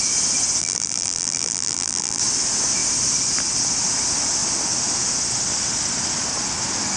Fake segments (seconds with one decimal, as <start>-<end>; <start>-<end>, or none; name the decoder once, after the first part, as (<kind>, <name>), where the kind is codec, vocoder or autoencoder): 0.6-2.2 (vocoder, BigVGAN v2)